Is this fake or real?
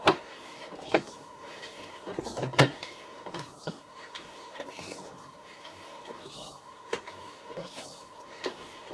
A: fake